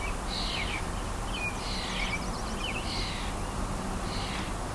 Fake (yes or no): no